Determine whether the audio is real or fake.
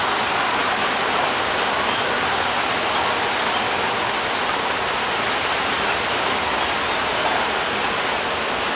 real